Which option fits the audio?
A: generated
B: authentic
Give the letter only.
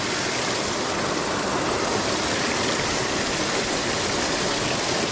B